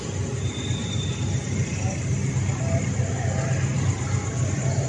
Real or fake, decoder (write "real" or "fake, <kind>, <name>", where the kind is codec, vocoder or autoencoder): real